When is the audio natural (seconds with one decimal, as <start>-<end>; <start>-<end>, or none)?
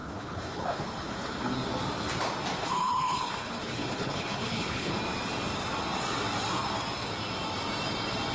1.5-2.6; 5.0-8.3